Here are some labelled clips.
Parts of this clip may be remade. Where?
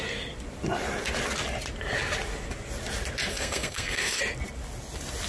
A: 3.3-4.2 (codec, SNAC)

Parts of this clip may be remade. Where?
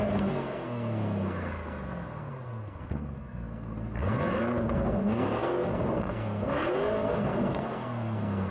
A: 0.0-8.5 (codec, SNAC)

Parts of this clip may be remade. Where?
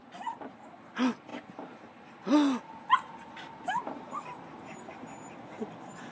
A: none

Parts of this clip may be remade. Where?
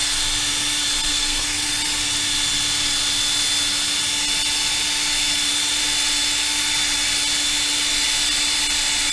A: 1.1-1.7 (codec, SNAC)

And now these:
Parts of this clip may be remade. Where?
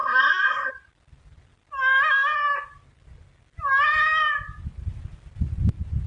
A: 0.0-0.7 (codec, SNAC)